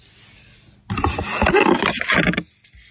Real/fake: real